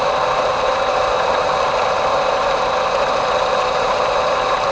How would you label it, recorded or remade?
remade